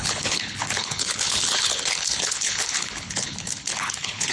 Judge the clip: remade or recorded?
remade